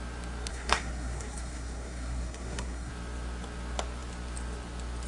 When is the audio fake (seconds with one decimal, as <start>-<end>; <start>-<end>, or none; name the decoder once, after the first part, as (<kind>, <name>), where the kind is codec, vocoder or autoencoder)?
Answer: 0.5-2.9 (codec, SNAC)